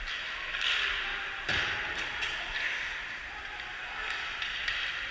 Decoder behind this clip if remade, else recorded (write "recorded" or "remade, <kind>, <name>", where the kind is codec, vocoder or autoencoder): recorded